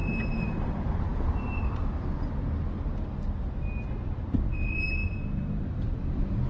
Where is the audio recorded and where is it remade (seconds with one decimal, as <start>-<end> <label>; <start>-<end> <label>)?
0.0-0.6 remade; 0.6-5.0 recorded; 5.0-5.8 remade; 5.8-6.5 recorded